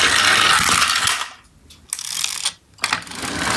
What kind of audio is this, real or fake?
real